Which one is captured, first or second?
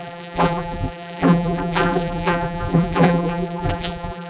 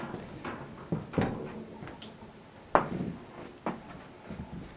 second